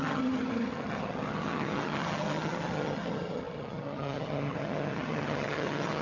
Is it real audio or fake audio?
fake